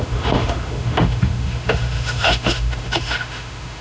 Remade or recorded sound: remade